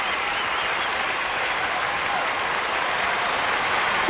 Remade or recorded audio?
recorded